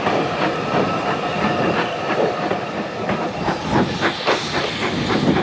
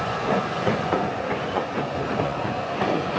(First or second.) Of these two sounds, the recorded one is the first